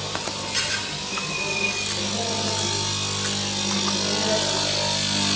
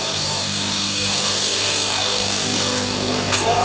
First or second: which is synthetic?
second